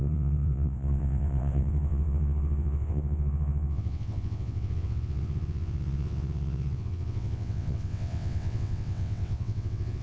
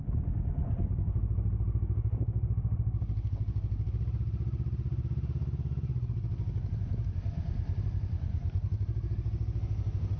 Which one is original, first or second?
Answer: second